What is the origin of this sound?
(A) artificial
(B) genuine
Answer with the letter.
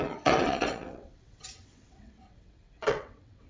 A